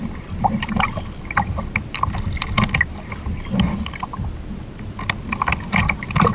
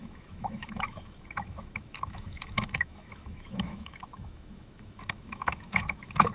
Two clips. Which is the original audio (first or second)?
first